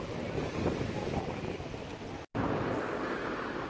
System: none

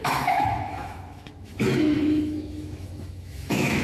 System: autoencoder, DAC-VAE